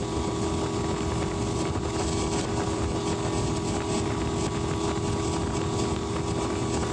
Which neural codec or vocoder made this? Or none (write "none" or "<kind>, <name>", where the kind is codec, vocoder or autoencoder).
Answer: none